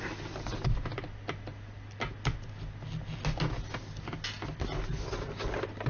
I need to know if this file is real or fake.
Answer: real